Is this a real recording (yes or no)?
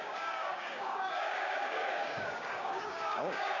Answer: no